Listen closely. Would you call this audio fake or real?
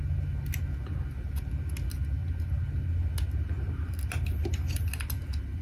real